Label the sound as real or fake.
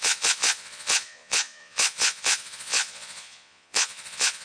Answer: fake